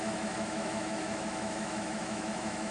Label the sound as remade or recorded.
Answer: remade